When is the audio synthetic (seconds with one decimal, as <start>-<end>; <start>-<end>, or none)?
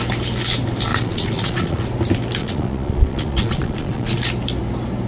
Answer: 0.9-1.8; 2.4-4.2